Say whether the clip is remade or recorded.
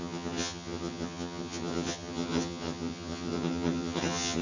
remade